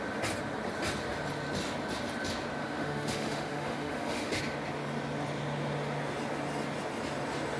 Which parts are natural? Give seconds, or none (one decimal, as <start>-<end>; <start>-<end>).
0.0-2.6; 4.4-7.6